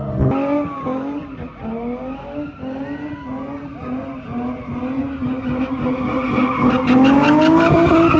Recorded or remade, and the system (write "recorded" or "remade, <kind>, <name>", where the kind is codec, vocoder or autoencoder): recorded